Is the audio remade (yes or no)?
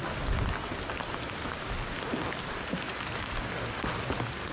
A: no